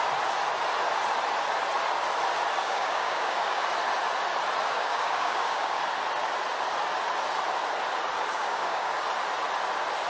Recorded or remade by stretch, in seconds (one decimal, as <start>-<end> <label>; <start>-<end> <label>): 0.0-2.6 recorded; 2.6-3.6 remade; 3.6-4.7 recorded; 4.7-5.8 remade; 5.8-8.3 recorded; 8.3-8.9 remade; 8.9-10.1 recorded